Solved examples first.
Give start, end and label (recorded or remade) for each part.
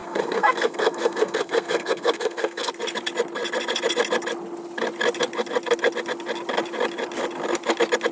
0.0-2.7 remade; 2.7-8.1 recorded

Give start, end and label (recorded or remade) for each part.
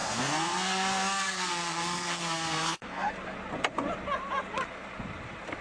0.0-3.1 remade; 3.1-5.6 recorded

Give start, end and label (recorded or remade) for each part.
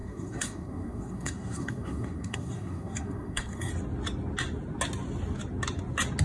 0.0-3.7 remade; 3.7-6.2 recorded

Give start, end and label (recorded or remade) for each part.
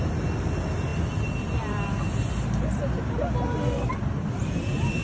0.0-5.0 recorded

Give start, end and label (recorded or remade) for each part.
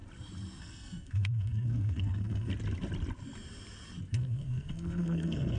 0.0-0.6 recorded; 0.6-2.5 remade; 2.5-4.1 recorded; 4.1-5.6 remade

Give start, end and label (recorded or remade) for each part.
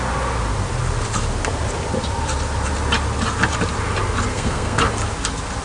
0.0-4.3 recorded; 4.3-4.8 remade; 4.8-5.6 recorded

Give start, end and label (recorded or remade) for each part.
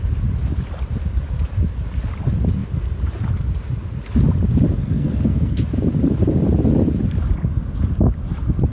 0.0-4.7 recorded; 4.7-5.6 remade; 5.6-8.7 recorded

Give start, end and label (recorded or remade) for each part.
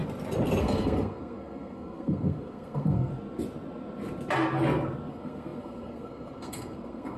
0.0-0.6 recorded; 0.6-3.1 remade; 3.1-5.1 recorded; 5.1-7.2 remade